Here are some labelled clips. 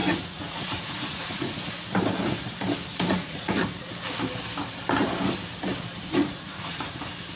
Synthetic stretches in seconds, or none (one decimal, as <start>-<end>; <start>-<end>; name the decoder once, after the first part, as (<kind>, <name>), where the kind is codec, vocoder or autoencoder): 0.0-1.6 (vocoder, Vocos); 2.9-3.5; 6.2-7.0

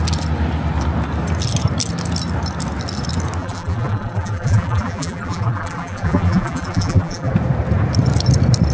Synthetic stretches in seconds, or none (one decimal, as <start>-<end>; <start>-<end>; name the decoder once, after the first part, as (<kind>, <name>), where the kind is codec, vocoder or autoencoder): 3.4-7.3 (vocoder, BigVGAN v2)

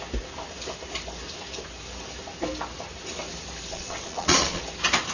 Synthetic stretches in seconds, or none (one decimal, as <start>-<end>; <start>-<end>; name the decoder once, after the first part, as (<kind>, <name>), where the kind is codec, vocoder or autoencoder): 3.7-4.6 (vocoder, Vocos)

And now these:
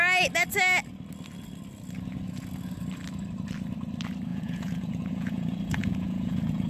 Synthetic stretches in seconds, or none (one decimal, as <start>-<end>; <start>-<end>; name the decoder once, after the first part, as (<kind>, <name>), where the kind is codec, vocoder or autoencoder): 4.3-6.7 (vocoder, Vocos)

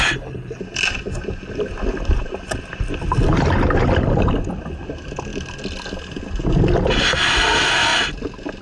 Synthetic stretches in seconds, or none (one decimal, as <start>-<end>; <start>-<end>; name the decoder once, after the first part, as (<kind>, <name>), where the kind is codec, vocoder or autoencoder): 0.0-0.6 (codec, HILCodec)

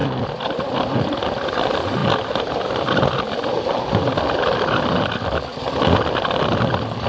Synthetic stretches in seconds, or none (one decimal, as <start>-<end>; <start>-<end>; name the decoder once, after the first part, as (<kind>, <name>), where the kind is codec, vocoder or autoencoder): none

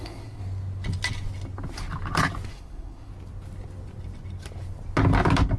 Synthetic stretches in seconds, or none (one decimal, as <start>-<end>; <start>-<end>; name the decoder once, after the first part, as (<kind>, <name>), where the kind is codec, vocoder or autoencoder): 0.0-0.4 (codec, SNAC); 2.5-3.1

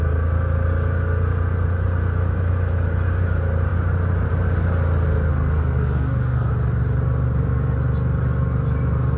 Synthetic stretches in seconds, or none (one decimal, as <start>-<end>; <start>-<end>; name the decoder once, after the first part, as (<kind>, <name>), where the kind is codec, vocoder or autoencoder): 5.3-6.5 (codec, SNAC)